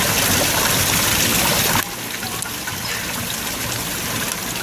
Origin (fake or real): real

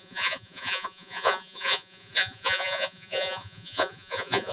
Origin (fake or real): fake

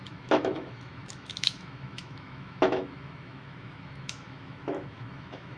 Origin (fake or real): fake